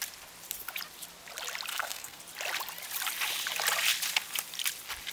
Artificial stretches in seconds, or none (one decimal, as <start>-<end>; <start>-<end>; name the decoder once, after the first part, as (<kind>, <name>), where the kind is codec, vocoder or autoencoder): 1.7-2.2 (codec, SNAC)